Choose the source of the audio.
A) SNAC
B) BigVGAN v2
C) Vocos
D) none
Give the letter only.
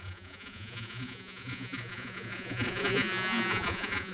C